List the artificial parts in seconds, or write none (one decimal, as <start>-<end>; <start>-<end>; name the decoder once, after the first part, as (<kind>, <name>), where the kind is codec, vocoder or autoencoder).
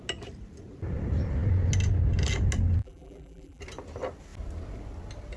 2.8-3.6 (vocoder, BigVGAN v2)